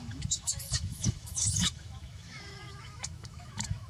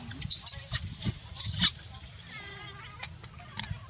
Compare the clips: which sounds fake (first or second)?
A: first